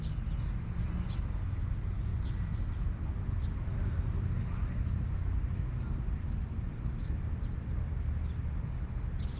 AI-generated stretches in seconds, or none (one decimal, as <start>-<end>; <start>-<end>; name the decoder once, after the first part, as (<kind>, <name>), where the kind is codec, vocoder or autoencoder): none